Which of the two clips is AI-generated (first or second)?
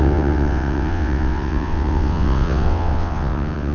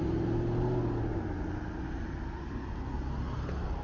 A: first